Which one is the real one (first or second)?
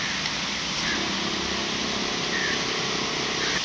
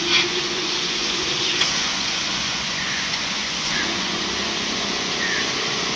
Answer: first